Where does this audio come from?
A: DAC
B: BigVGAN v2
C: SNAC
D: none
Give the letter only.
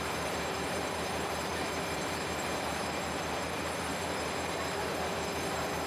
B